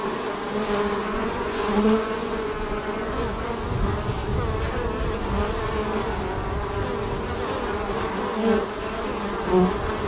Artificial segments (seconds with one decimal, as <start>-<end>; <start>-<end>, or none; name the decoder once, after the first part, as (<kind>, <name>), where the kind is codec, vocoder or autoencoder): 1.0-3.4 (vocoder, Vocos)